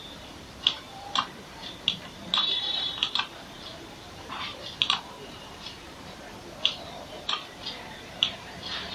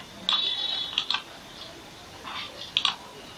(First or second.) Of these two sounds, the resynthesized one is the first